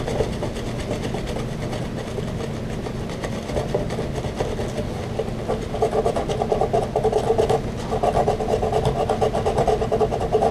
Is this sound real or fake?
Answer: real